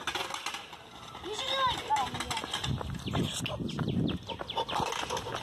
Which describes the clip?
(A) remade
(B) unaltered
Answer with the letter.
B